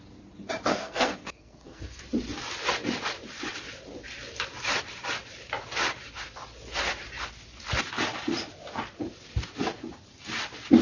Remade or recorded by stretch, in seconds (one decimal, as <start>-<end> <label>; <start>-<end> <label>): 0.0-0.7 recorded; 0.7-2.0 remade; 2.0-10.8 recorded